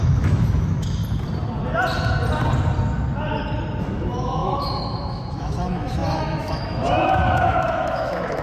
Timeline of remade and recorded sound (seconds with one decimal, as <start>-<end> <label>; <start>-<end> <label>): 0.0-1.0 remade; 1.0-3.8 recorded; 3.8-8.4 remade